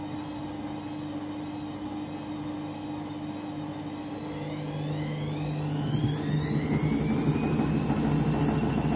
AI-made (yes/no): no